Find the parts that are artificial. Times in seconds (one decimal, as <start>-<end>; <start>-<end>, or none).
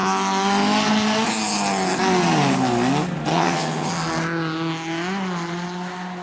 3.3-3.9